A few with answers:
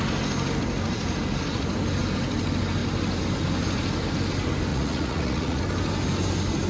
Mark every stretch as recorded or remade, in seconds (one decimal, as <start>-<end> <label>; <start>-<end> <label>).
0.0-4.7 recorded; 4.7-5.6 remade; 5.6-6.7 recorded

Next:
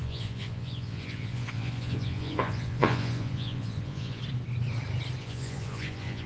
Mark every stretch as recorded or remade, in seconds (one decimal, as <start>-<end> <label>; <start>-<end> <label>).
0.0-4.2 remade; 4.2-5.2 recorded; 5.2-6.3 remade

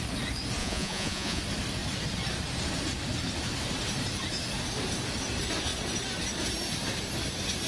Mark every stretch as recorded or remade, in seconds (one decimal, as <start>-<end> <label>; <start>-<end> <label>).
0.0-0.6 recorded; 0.6-1.4 remade; 1.4-7.7 recorded

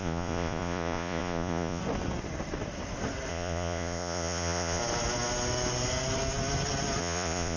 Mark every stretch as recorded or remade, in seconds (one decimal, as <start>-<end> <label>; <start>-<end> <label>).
0.0-1.8 remade; 1.8-3.3 recorded; 3.3-4.8 remade; 4.8-7.0 recorded; 7.0-7.6 remade

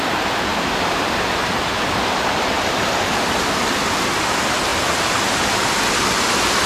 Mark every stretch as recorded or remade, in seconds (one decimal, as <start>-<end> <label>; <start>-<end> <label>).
0.0-6.7 recorded

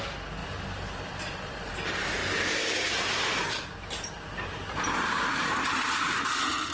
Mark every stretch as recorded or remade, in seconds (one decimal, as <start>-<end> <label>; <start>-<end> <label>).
0.0-6.7 recorded